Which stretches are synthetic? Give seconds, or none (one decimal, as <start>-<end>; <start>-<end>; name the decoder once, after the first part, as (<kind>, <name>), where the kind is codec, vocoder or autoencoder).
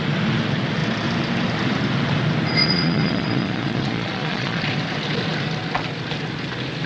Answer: 2.6-4.6 (vocoder, Vocos)